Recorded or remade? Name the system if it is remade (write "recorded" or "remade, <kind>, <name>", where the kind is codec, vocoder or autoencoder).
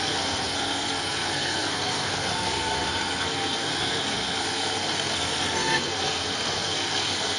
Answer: remade, codec, SNAC